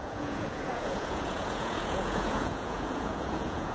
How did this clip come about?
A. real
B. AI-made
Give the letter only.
B